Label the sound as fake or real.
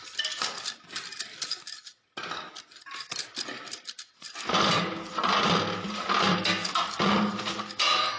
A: real